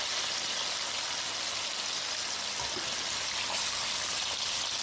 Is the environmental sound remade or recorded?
recorded